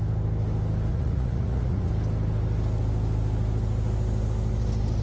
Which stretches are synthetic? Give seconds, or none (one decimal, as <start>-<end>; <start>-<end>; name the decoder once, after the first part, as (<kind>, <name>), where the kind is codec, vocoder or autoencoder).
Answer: 0.9-1.9 (vocoder, Vocos)